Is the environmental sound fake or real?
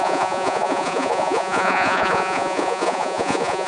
fake